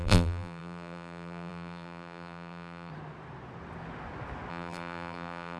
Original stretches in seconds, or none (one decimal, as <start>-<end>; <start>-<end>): 2.9-4.5